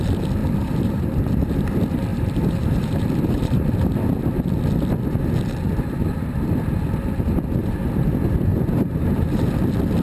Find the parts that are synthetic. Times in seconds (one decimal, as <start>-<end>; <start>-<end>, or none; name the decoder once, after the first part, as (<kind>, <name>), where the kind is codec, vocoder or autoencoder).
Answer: 0.4-1.2 (vocoder, BigVGAN v2); 2.1-3.7; 8.5-9.5